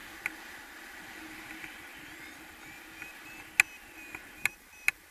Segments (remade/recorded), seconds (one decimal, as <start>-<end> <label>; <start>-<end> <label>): 0.0-5.1 recorded

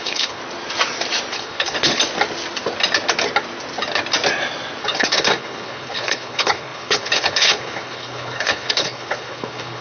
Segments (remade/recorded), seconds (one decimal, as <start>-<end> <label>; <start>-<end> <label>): 0.0-0.4 remade; 0.4-1.3 recorded; 1.3-1.9 remade; 1.9-4.8 recorded; 4.8-9.8 remade